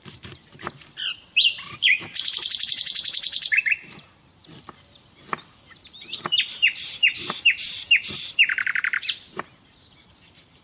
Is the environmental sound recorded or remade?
remade